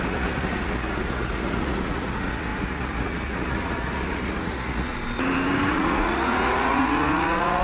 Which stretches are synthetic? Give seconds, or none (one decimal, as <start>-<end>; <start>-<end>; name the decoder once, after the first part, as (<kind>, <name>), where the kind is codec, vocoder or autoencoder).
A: 0.0-4.9 (vocoder, Vocos); 5.7-7.6